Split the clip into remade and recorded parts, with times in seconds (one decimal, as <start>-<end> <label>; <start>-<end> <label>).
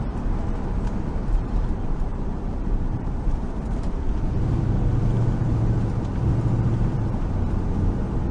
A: 0.0-1.2 recorded; 1.2-4.5 remade; 4.5-8.3 recorded